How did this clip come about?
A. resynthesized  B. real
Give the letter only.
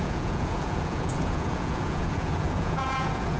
A